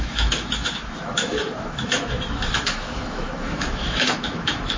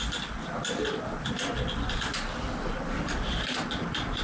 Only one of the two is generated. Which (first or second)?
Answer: first